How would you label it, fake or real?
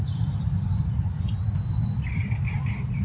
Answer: real